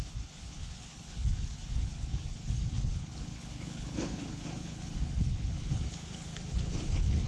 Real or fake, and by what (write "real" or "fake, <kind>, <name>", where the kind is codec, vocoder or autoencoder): fake, codec, HILCodec